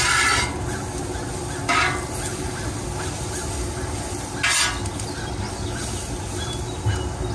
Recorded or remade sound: recorded